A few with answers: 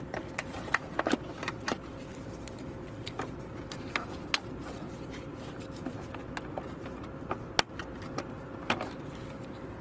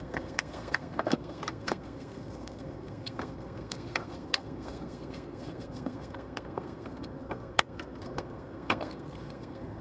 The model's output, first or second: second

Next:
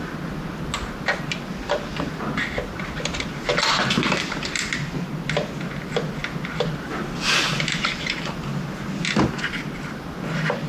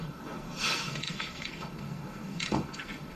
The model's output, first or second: second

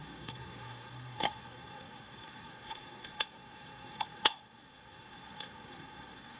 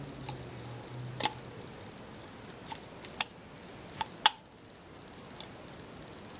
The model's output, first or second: first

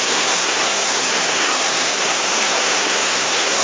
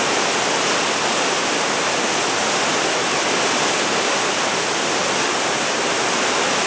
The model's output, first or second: first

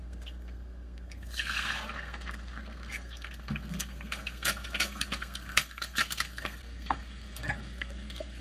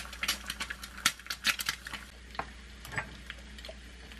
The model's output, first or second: first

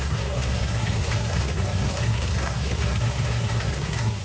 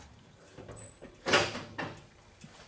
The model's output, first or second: first